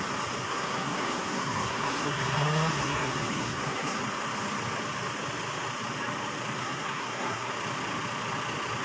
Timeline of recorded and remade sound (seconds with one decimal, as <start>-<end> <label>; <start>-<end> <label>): 0.0-0.4 recorded; 0.4-4.0 remade; 4.0-6.6 recorded; 6.6-7.5 remade; 7.5-8.8 recorded